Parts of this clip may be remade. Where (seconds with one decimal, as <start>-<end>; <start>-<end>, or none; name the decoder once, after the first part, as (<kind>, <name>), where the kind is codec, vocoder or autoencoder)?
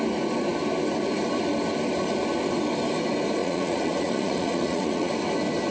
3.4-5.1 (vocoder, Vocos)